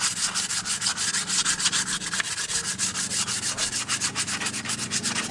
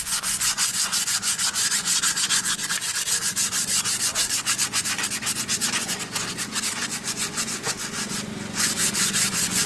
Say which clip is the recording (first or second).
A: first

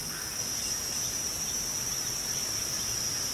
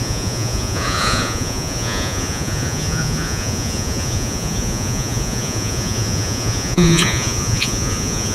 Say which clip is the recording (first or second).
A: first